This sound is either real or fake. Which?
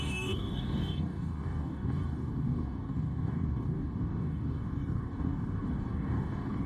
fake